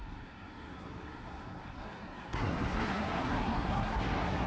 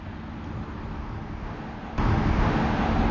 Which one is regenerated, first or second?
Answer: first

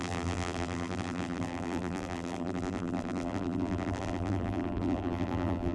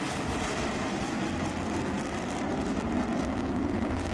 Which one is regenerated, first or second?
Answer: first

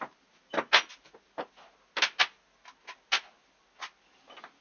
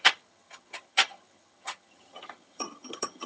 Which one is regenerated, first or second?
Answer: second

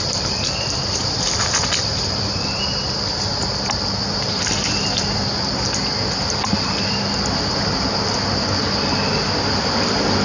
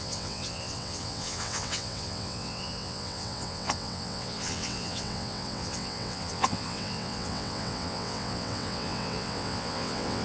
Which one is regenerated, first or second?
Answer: second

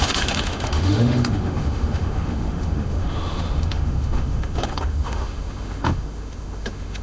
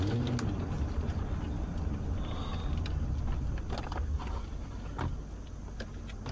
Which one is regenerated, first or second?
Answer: first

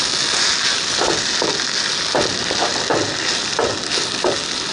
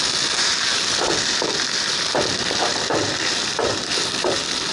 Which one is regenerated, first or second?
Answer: second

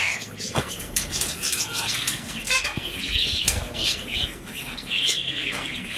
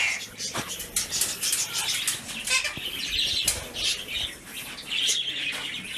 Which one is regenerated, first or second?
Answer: first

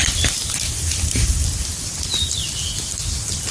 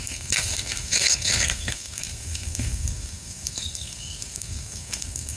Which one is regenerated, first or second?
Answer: second